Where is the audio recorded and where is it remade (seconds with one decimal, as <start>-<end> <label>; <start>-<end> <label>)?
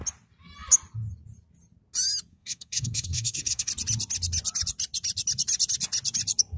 0.0-2.3 recorded; 2.3-3.7 remade; 3.7-6.6 recorded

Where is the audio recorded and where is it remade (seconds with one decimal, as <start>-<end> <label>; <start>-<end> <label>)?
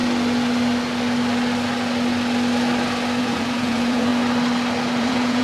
0.0-3.2 recorded; 3.2-4.1 remade; 4.1-5.0 recorded; 5.0-5.4 remade